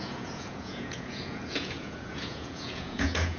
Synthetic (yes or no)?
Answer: yes